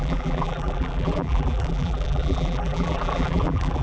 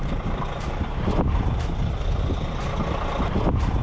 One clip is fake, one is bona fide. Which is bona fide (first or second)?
second